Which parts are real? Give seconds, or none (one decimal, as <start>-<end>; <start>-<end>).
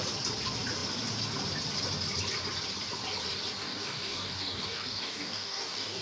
0.0-3.6